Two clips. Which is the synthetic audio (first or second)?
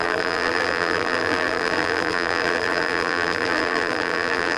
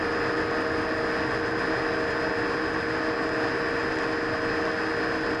first